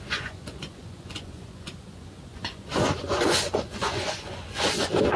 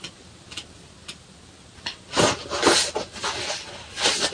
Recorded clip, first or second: second